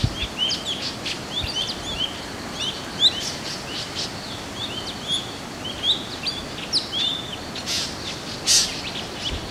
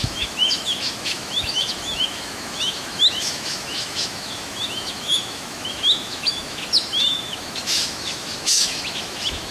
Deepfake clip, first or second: second